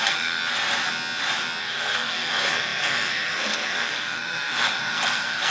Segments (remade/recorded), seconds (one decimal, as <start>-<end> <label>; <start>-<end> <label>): 0.0-0.4 remade; 0.4-1.6 recorded; 1.6-5.5 remade